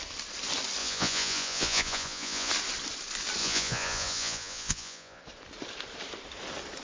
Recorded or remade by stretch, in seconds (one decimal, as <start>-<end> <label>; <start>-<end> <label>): 0.0-0.8 recorded; 0.8-2.5 remade; 2.5-3.4 recorded; 3.4-5.2 remade; 5.2-6.8 recorded